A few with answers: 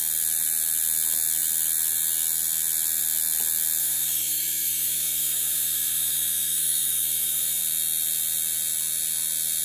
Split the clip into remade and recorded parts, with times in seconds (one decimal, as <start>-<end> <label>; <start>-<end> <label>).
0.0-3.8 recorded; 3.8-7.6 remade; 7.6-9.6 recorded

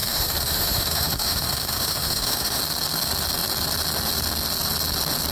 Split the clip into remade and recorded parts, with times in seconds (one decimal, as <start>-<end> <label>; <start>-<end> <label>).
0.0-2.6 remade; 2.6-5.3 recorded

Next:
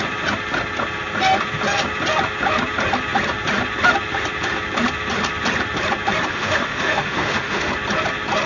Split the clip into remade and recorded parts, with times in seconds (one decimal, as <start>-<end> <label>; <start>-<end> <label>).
0.0-6.3 recorded; 6.3-7.7 remade; 7.7-8.5 recorded